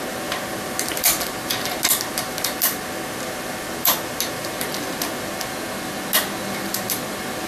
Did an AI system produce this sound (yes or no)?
no